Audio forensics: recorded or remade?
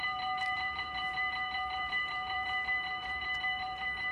remade